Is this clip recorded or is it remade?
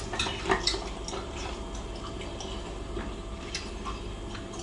recorded